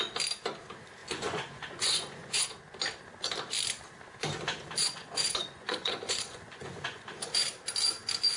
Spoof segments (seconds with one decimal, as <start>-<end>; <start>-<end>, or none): 1.0-2.4; 4.8-7.3